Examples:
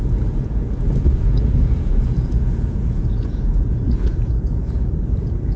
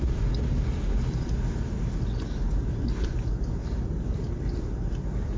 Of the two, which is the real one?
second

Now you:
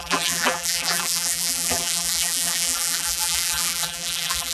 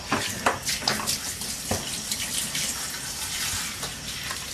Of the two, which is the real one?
second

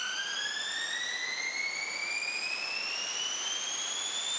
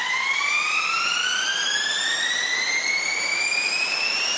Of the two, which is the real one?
first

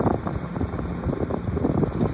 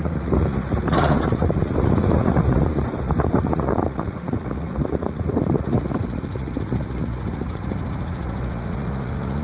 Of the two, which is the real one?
first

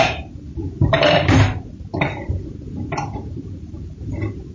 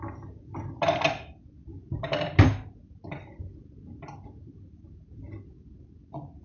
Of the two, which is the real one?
second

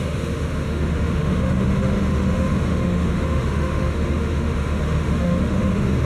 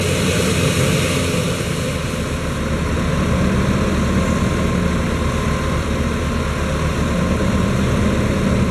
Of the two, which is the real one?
second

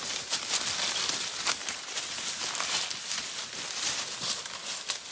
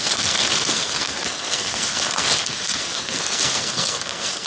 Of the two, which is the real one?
first